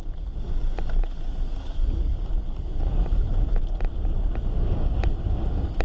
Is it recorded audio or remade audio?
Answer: recorded